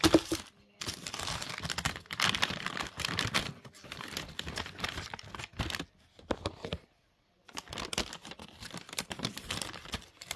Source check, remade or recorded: recorded